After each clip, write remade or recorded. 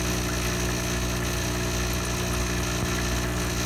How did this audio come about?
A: recorded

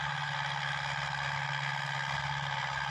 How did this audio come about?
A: recorded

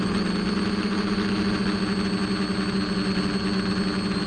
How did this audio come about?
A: recorded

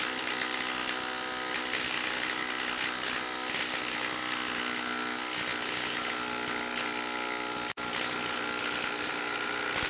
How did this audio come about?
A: recorded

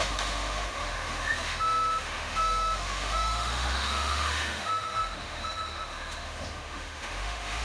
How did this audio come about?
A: remade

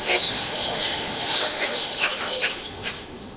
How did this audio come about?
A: remade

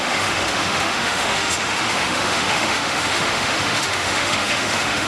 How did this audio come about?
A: remade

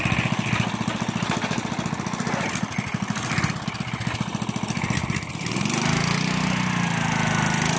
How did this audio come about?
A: recorded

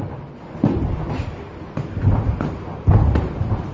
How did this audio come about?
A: recorded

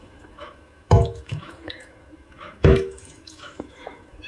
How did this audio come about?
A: remade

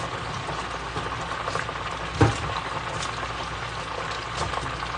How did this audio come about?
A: recorded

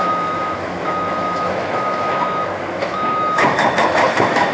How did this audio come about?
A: remade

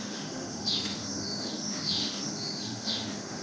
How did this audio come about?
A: remade